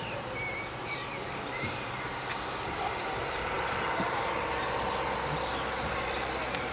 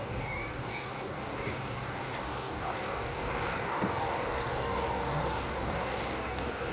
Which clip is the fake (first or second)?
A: second